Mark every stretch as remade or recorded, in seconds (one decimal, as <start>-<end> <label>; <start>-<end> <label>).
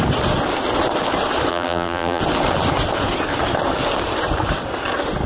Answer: 0.0-1.5 recorded; 1.5-2.2 remade; 2.2-5.3 recorded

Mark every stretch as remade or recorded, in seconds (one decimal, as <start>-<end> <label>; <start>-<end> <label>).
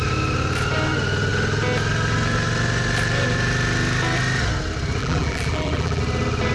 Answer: 0.0-5.0 recorded; 5.0-6.0 remade; 6.0-6.5 recorded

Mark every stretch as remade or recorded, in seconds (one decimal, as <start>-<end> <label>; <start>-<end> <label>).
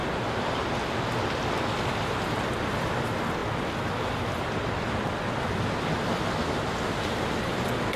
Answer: 0.0-0.7 remade; 0.7-3.4 recorded; 3.4-4.7 remade; 4.7-7.5 recorded; 7.5-8.0 remade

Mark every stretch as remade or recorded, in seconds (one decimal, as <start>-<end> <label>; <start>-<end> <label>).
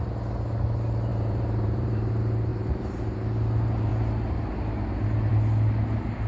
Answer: 0.0-1.1 recorded; 1.1-2.1 remade; 2.1-2.5 recorded; 2.5-3.0 remade; 3.0-6.3 recorded